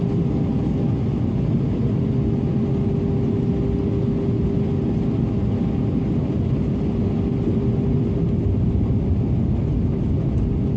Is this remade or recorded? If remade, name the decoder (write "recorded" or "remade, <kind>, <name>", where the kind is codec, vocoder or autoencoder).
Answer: recorded